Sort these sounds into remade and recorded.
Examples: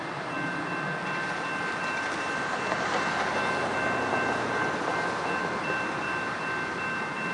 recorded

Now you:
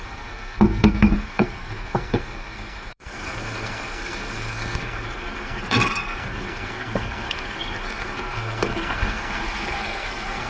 remade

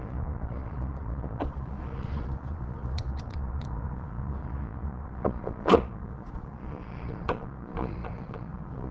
remade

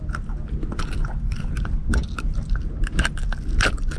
recorded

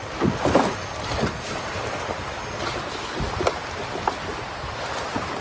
recorded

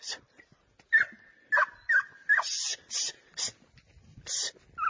recorded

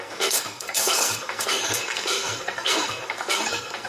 remade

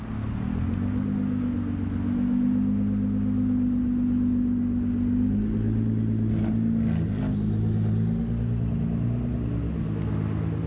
recorded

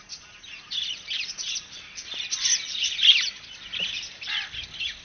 recorded